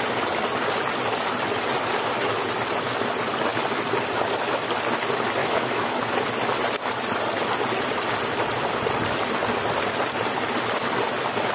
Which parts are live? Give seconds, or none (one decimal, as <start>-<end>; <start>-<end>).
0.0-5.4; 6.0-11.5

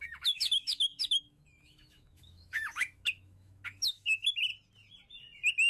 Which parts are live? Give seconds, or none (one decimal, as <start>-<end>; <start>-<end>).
4.5-5.7

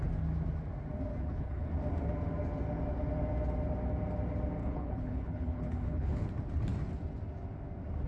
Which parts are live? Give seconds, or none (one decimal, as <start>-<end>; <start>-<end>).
0.0-1.1; 1.7-4.6; 6.3-8.1

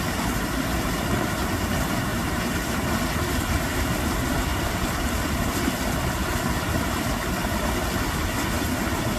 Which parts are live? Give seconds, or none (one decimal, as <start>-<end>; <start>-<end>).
0.0-2.1; 2.6-4.5; 5.1-9.2